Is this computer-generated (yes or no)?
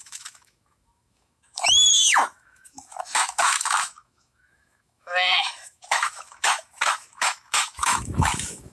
yes